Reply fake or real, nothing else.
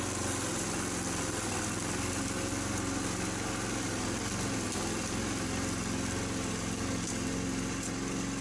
real